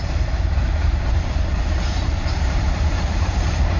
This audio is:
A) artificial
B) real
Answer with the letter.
A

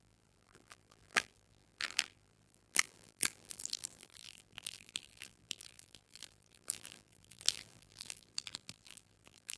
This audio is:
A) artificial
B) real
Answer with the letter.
A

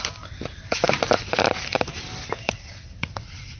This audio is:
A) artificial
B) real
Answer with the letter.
A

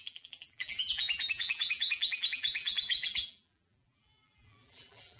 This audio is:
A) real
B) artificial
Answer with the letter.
B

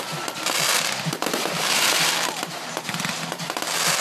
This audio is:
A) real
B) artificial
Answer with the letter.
B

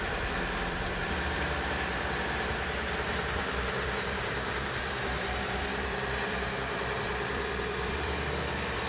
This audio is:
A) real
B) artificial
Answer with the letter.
B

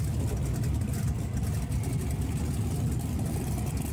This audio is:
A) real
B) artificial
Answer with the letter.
A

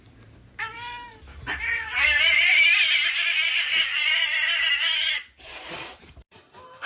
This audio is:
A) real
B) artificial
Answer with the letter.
B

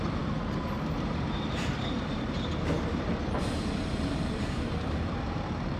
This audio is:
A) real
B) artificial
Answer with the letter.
B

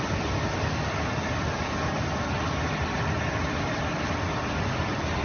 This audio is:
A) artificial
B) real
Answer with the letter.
B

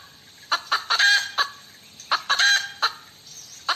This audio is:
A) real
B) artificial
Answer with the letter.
B